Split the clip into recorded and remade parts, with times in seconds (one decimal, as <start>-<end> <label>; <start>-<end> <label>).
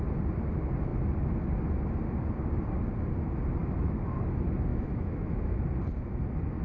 0.0-3.6 recorded; 3.6-4.3 remade; 4.3-4.7 recorded; 4.7-5.6 remade; 5.6-6.6 recorded